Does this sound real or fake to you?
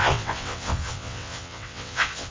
fake